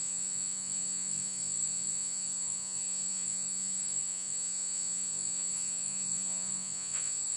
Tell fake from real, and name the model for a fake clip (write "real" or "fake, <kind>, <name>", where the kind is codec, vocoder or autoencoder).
fake, vocoder, Vocos